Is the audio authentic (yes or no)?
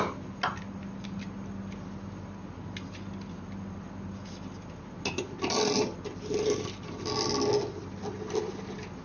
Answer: yes